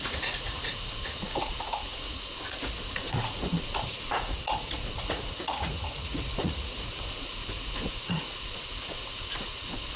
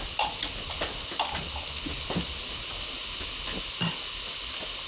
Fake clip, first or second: first